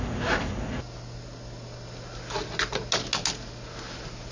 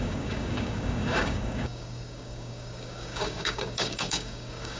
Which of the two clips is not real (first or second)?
second